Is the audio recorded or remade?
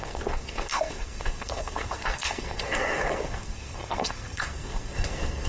remade